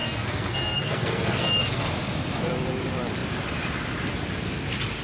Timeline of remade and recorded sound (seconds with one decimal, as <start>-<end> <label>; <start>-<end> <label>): 0.0-1.8 remade; 1.8-5.0 recorded